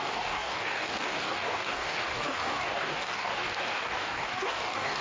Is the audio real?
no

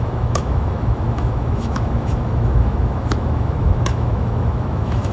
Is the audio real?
no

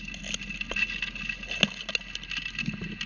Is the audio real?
yes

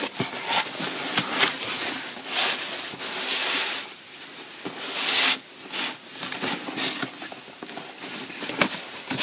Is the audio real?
yes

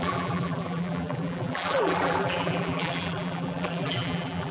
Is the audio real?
no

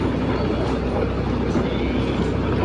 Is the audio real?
yes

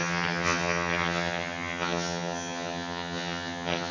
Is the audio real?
no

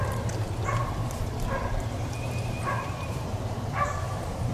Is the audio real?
no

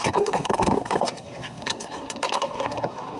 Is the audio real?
no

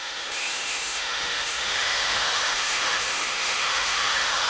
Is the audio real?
no